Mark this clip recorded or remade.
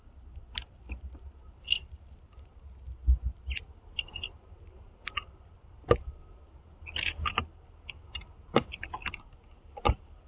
recorded